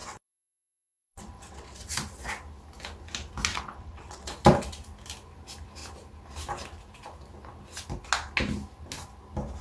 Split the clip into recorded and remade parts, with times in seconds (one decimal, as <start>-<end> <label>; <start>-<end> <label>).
0.0-1.9 remade; 1.9-3.5 recorded; 3.5-4.3 remade; 4.3-9.6 recorded